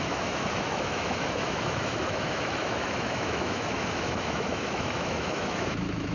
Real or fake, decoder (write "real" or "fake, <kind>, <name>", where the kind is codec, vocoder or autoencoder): fake, autoencoder, DAC-VAE